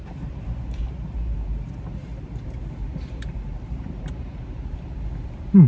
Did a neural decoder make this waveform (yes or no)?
yes